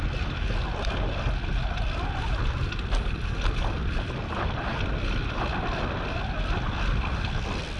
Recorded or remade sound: recorded